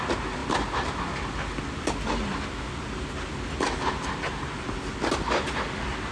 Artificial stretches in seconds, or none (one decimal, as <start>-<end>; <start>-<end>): none